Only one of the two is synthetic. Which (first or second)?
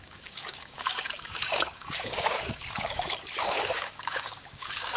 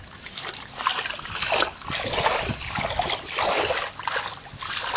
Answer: first